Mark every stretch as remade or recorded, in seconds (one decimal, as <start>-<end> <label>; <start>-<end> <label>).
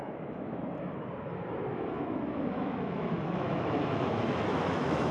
0.0-0.6 remade; 0.6-1.7 recorded; 1.7-5.1 remade